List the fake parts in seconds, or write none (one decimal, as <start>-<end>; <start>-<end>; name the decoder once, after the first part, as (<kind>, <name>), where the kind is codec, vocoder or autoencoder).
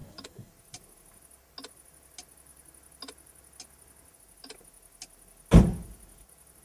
0.0-0.5 (codec, DAC)